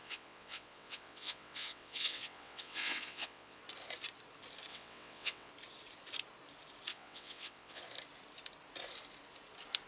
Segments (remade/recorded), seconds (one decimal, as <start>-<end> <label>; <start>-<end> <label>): 0.0-3.6 remade; 3.6-4.7 recorded; 4.7-5.5 remade; 5.5-6.9 recorded; 6.9-7.8 remade; 7.8-9.9 recorded